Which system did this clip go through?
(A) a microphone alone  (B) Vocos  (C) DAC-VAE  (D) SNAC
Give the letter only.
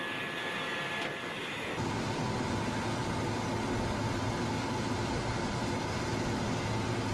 A